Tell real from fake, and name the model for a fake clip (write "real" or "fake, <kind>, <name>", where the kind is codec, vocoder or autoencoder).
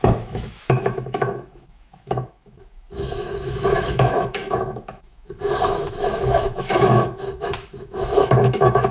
fake, autoencoder, DAC-VAE